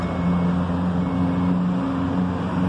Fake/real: real